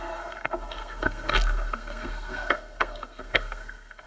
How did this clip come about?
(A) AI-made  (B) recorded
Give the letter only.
A